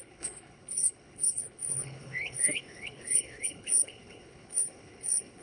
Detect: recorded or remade remade